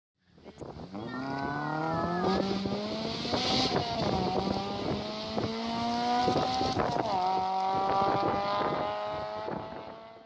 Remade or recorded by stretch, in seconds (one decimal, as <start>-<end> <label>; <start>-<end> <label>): 0.0-10.3 recorded